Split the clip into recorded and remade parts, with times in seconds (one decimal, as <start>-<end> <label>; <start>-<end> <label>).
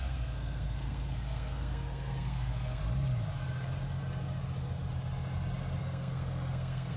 0.0-2.8 remade; 2.8-5.8 recorded; 5.8-7.0 remade